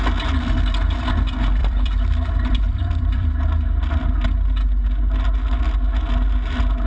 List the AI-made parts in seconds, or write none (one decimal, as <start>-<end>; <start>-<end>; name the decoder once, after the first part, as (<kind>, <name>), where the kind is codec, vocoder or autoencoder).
1.6-3.3 (vocoder, BigVGAN v2)